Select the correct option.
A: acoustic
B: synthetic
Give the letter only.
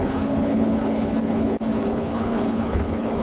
B